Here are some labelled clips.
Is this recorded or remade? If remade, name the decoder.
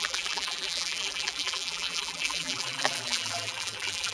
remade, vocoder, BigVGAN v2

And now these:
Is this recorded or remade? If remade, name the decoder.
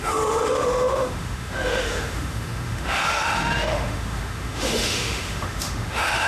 remade, autoencoder, DAC-VAE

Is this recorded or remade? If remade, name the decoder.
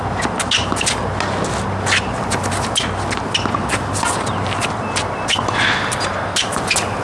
recorded